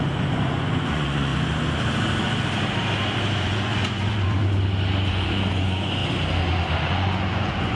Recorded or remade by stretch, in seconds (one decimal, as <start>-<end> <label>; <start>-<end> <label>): 0.0-1.3 remade; 1.3-3.4 recorded; 3.4-4.4 remade; 4.4-5.1 recorded; 5.1-6.0 remade; 6.0-6.9 recorded; 6.9-7.8 remade